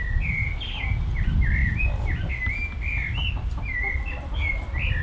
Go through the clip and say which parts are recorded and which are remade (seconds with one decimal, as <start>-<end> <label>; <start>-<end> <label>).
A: 0.0-5.0 recorded